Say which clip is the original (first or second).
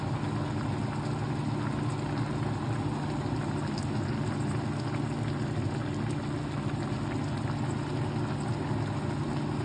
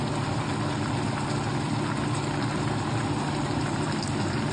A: first